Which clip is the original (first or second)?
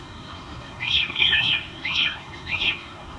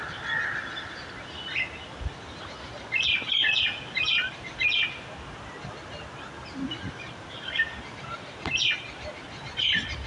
second